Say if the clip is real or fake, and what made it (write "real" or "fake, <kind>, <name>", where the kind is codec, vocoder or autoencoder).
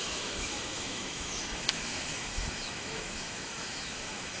fake, autoencoder, DAC-VAE